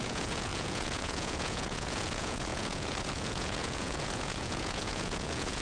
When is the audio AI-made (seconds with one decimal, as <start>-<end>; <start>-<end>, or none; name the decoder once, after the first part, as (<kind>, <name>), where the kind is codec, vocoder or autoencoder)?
0.0-5.6 (vocoder, Vocos)